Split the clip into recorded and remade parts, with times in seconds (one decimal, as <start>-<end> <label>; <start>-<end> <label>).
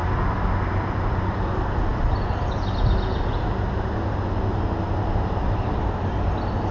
0.0-6.7 recorded